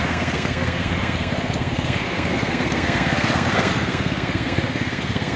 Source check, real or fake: fake